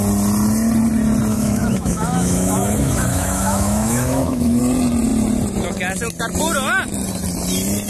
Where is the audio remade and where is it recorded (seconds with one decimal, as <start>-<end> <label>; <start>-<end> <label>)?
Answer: 0.0-1.3 recorded; 1.3-4.6 remade; 4.6-7.9 recorded